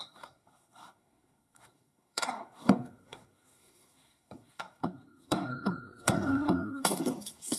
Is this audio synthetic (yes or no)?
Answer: yes